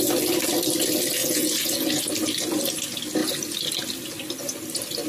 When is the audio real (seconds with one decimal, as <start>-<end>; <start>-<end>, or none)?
0.0-1.2; 2.1-5.1